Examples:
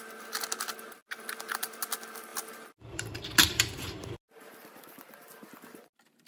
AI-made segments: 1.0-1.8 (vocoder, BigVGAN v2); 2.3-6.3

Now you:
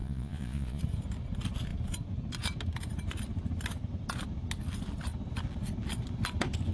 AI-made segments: 0.0-0.8 (vocoder, Vocos)

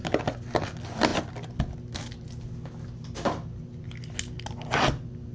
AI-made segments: none

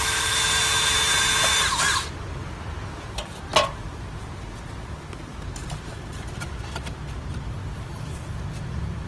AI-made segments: 5.3-5.9 (vocoder, BigVGAN v2)

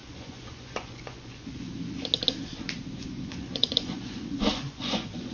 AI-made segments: 0.0-1.7 (vocoder, Vocos); 3.0-5.3